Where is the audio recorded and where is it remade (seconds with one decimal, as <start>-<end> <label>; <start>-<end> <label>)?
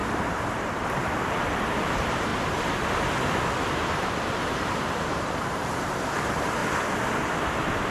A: 0.0-2.3 remade; 2.3-3.7 recorded; 3.7-6.6 remade; 6.6-7.4 recorded; 7.4-7.9 remade